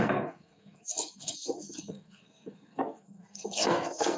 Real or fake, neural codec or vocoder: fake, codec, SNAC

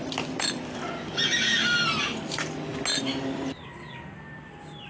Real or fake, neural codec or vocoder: real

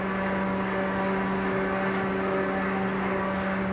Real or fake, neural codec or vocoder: real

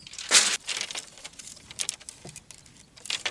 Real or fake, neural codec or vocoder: real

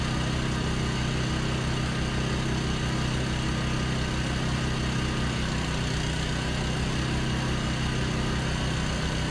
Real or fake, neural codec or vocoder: real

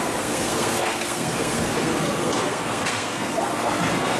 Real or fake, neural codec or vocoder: fake, codec, SNAC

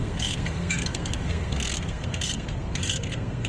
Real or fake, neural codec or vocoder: fake, codec, SNAC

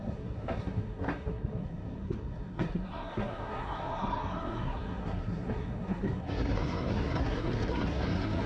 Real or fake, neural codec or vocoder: fake, codec, SNAC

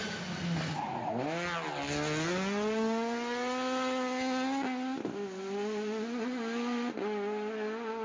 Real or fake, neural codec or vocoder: real